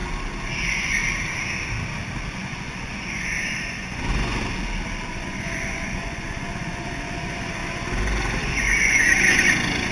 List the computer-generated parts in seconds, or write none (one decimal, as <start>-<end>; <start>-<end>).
0.6-1.0; 2.3-4.4; 5.1-9.9